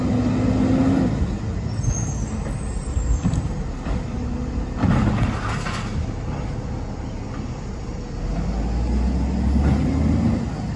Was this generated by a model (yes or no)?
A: no